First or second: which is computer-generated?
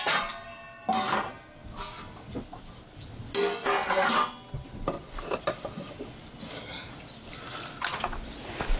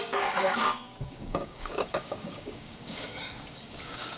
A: second